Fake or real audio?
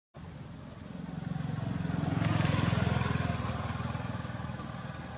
real